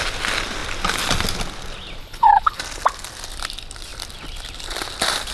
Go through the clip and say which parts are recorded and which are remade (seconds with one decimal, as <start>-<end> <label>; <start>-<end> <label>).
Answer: 0.0-2.0 recorded; 2.0-2.6 remade; 2.6-5.3 recorded